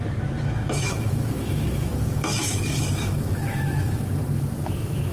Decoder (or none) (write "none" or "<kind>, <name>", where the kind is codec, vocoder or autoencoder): autoencoder, DAC-VAE